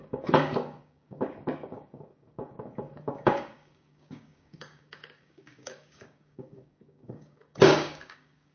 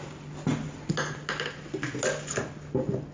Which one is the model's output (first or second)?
first